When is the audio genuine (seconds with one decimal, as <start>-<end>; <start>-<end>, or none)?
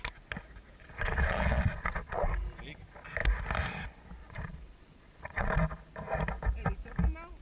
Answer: 0.0-0.8; 2.3-4.2; 5.5-7.4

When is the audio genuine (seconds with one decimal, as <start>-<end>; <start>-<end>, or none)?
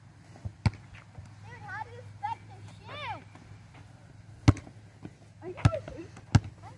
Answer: 0.0-6.8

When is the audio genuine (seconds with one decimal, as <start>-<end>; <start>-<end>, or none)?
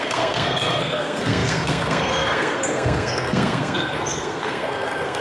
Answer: none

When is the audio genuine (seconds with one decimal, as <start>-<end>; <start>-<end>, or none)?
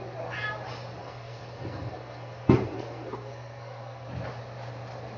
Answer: 0.0-1.0; 4.1-5.2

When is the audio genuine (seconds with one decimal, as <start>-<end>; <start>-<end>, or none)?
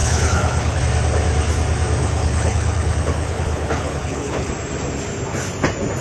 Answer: 0.8-2.0; 4.5-6.0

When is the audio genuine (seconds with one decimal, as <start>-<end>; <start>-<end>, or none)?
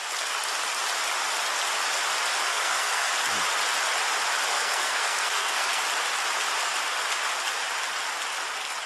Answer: 0.0-2.5; 3.1-4.5; 5.8-8.9